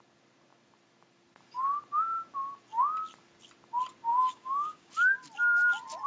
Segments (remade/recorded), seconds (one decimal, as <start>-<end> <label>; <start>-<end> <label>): 0.0-4.1 recorded; 4.1-4.9 remade; 4.9-6.1 recorded